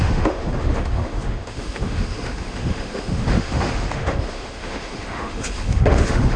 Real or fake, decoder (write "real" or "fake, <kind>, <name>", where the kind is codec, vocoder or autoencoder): fake, autoencoder, DAC-VAE